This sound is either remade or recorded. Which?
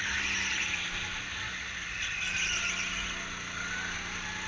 recorded